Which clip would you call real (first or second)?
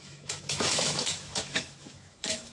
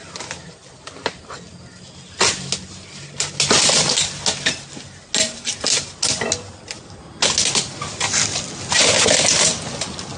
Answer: second